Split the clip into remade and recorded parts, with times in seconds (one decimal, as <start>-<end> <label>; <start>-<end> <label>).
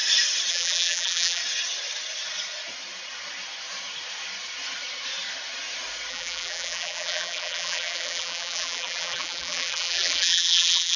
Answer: 0.0-0.5 recorded; 0.5-1.4 remade; 1.4-6.1 recorded; 6.1-11.0 remade